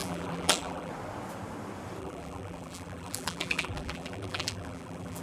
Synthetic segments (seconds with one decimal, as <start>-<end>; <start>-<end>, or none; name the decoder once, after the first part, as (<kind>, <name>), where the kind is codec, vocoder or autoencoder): 0.0-0.9 (vocoder, BigVGAN v2); 2.0-5.2